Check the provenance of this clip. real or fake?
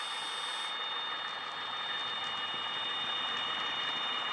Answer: real